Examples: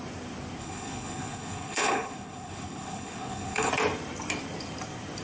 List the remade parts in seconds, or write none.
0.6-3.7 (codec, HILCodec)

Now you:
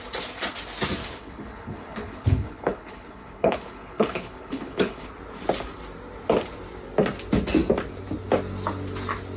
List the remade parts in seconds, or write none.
1.0-5.1 (codec, HILCodec)

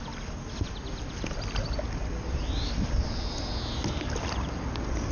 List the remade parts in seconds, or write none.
none

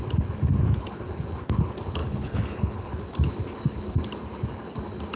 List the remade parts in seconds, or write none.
2.0-2.9 (codec, HILCodec)

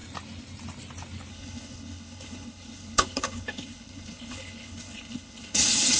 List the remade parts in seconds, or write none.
1.3-6.0 (codec, HILCodec)

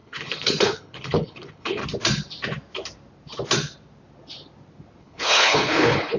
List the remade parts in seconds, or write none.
0.0-1.8 (codec, HILCodec); 5.0-6.2